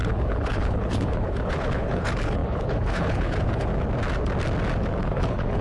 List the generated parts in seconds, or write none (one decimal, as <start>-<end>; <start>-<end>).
0.0-3.7; 5.0-5.6